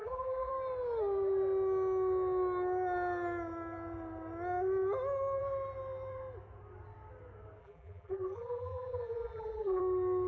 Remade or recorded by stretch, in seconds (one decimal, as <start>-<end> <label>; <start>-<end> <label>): 0.0-0.5 remade; 0.5-7.6 recorded; 7.6-9.8 remade; 9.8-10.3 recorded

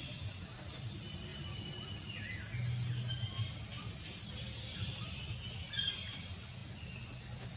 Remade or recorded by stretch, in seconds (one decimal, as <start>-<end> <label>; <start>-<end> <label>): 0.0-7.6 recorded